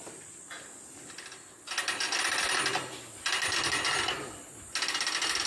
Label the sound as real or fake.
real